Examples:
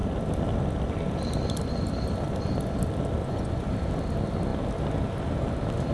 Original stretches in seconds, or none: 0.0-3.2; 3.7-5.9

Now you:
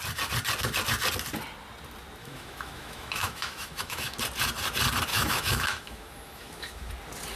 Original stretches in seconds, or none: 0.0-2.2; 4.2-5.1; 6.9-7.4

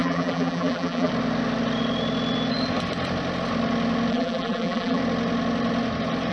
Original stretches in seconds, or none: 1.1-4.1; 5.0-6.3